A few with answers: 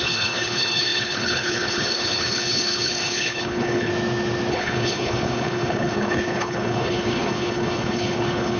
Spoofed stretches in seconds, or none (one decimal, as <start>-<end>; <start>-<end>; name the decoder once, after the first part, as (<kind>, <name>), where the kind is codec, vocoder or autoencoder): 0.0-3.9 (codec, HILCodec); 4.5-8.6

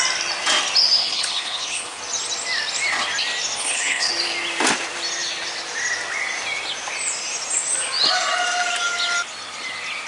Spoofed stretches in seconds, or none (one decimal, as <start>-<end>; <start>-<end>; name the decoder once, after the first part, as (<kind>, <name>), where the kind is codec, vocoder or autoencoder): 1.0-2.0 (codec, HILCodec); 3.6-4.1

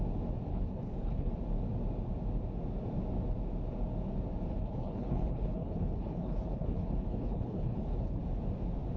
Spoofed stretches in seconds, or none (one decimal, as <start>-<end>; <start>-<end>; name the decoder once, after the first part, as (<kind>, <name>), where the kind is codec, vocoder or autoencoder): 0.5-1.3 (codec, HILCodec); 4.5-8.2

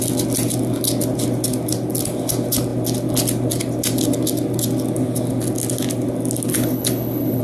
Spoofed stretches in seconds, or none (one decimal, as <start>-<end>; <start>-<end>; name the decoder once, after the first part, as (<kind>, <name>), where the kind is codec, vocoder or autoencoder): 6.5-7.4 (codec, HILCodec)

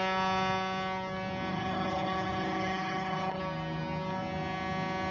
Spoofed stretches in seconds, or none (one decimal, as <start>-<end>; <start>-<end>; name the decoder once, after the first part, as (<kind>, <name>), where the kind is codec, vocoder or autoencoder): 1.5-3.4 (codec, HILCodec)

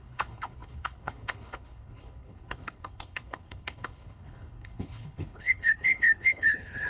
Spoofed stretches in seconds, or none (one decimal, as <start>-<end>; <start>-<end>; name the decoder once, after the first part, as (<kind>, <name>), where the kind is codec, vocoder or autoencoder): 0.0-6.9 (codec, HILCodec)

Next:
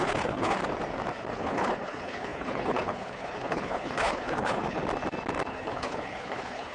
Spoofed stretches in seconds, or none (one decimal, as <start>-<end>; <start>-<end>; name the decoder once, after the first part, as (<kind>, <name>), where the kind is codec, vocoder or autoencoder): 0.0-0.6 (codec, HILCodec); 1.3-4.8; 5.5-6.7